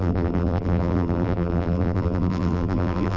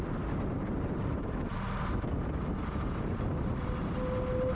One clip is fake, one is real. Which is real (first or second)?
second